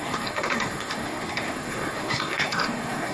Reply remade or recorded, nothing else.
remade